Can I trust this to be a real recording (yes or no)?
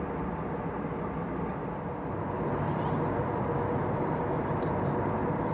yes